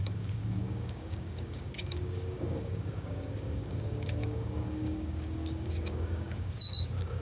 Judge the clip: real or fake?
fake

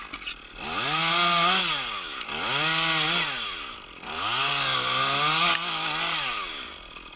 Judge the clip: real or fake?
real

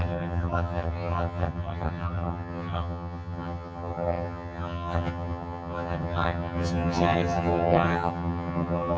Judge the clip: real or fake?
fake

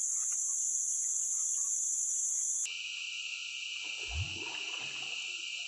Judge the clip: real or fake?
real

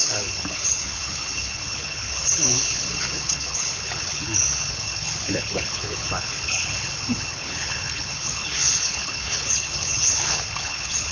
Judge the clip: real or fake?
fake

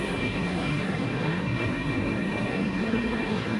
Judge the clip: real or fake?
fake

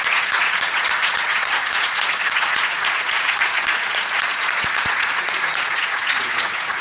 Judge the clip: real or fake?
fake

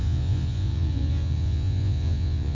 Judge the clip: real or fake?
fake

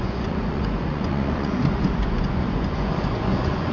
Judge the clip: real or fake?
fake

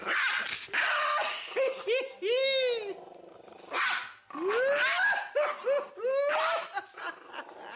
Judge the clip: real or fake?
real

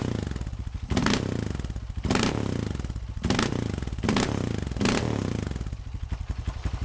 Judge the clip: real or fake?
real